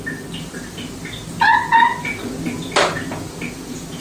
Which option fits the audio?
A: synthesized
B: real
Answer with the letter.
B